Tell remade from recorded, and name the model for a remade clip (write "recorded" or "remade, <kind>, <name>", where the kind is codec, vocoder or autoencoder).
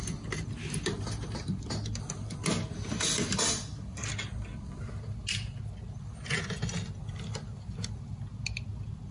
recorded